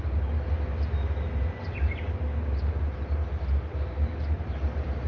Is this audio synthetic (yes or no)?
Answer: no